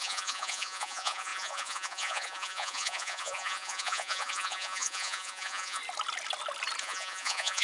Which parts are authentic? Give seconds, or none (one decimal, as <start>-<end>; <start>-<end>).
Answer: 5.8-6.8